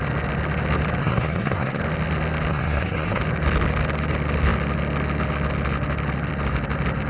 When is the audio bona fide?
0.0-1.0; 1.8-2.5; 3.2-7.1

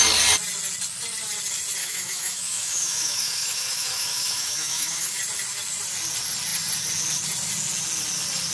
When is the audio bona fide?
0.0-1.8; 5.2-8.5